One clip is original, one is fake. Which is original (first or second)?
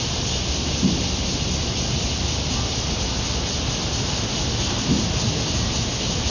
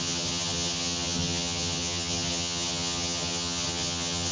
first